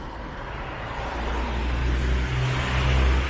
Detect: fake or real real